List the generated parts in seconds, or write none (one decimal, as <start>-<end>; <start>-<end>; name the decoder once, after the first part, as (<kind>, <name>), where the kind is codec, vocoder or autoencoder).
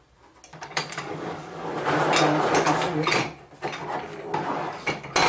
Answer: 0.5-1.7 (codec, DAC)